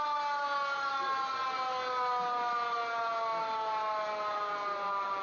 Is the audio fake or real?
real